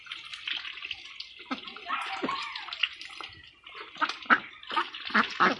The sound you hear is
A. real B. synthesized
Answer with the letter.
A